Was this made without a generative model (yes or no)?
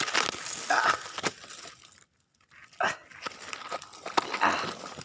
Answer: yes